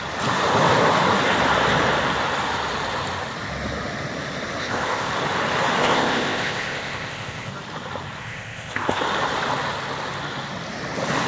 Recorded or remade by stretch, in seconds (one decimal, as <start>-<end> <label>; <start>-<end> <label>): 0.0-4.6 recorded; 4.6-5.1 remade; 5.1-5.8 recorded; 5.8-7.5 remade; 7.5-8.2 recorded; 8.2-9.0 remade; 9.0-11.3 recorded